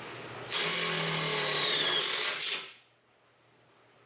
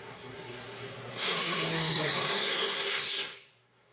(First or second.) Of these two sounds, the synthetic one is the second